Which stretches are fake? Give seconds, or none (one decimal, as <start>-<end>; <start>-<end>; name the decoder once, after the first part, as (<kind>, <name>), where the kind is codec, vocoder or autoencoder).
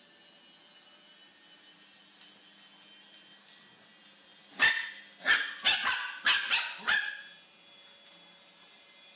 none